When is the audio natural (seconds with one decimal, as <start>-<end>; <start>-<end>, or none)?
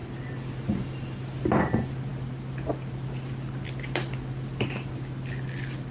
0.0-5.9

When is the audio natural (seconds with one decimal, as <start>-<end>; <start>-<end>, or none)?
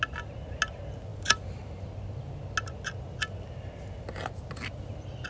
0.0-5.3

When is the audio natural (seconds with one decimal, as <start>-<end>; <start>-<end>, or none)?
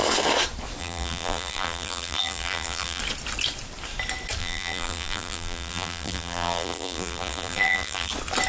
0.0-0.8; 3.0-4.4; 8.1-8.5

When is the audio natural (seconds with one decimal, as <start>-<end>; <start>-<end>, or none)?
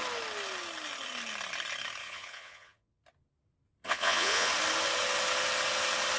0.0-2.0; 3.0-3.8; 4.5-6.2